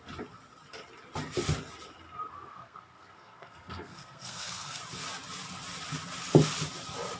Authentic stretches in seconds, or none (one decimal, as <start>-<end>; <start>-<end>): 0.0-2.5; 4.8-7.2